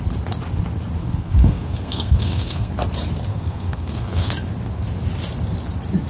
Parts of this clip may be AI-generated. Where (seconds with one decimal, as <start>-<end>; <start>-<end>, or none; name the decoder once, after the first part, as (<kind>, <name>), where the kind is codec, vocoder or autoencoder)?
1.0-2.7 (codec, SNAC); 3.3-4.3